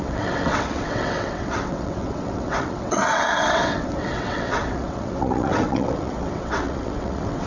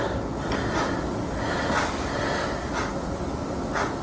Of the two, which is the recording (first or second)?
second